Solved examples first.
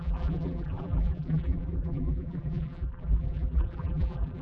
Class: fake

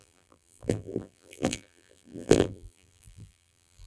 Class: fake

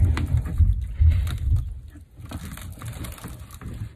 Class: real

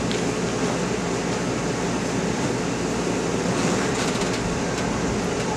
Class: real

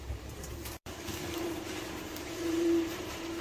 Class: fake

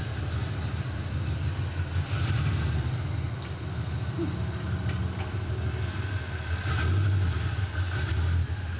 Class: real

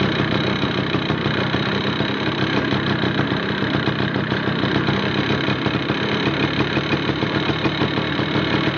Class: fake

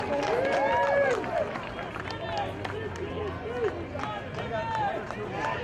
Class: real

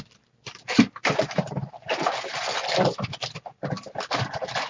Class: fake